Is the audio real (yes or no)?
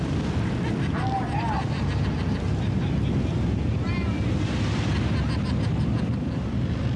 yes